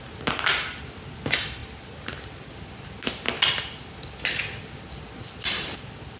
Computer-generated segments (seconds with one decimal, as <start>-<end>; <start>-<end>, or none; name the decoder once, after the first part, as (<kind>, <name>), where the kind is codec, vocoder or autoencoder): none